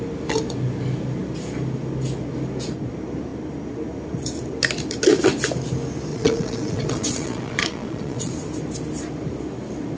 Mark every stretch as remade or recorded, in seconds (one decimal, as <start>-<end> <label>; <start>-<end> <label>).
0.0-6.1 recorded; 6.1-8.3 remade; 8.3-10.0 recorded